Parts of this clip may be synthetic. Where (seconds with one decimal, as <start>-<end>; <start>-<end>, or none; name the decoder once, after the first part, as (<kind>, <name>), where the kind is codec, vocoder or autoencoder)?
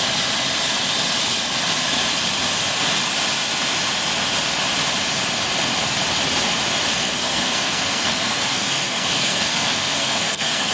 6.9-10.7 (codec, SNAC)